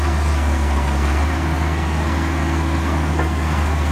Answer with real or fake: fake